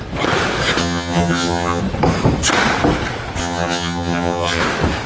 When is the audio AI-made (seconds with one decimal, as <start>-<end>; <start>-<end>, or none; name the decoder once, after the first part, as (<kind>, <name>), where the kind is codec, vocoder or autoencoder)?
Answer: 0.8-1.8 (vocoder, HiFi-GAN); 3.4-4.6